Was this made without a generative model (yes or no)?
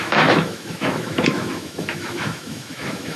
no